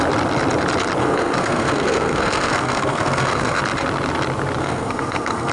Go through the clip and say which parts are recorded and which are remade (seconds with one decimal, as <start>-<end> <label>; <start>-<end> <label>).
0.0-1.0 recorded; 1.0-3.6 remade; 3.6-4.6 recorded; 4.6-5.5 remade